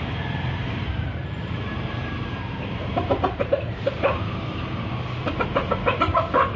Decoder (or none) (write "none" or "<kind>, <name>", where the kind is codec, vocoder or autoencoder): vocoder, BigVGAN v2